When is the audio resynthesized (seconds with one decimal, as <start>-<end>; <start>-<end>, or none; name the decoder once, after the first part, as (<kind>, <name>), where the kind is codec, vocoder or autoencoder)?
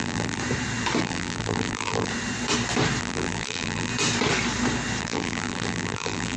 0.0-0.4 (vocoder, BigVGAN v2); 1.0-2.1; 3.0-3.9; 5.0-6.4